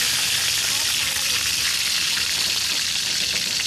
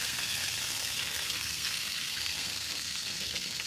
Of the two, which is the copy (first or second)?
second